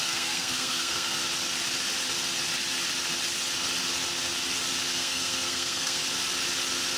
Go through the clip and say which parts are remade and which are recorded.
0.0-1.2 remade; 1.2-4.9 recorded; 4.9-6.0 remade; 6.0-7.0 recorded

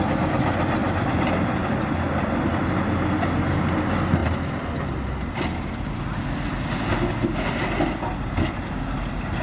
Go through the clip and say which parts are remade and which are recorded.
0.0-9.4 recorded

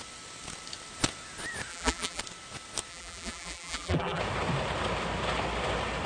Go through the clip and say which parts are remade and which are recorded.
0.0-1.7 recorded; 1.7-2.2 remade; 2.2-2.9 recorded; 2.9-4.2 remade; 4.2-6.1 recorded

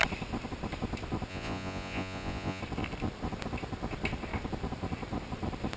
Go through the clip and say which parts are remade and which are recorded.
0.0-1.3 recorded; 1.3-2.6 remade; 2.6-5.8 recorded